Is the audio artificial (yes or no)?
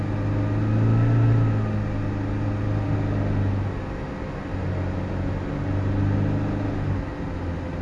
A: no